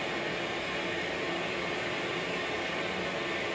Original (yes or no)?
yes